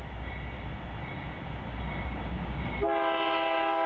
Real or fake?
real